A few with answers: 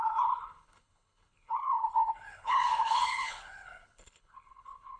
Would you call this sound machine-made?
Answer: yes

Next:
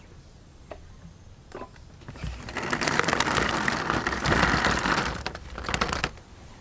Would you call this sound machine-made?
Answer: no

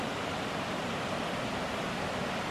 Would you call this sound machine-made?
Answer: no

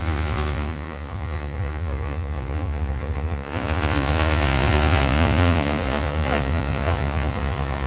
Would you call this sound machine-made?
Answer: yes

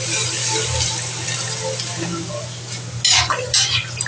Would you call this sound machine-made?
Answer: no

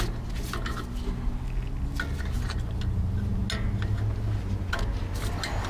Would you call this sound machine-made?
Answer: no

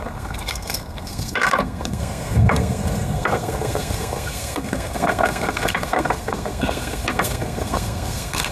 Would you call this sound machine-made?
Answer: yes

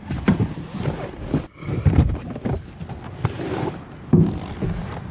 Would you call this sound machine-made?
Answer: yes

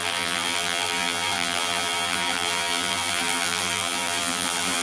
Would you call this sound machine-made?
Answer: yes